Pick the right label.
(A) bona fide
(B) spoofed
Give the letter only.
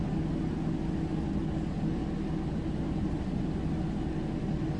A